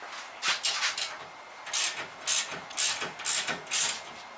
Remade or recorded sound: recorded